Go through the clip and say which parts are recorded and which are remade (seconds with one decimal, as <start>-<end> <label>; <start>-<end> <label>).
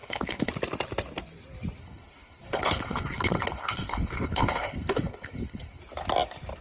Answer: 0.0-0.5 remade; 0.5-1.8 recorded; 1.8-5.8 remade; 5.8-6.6 recorded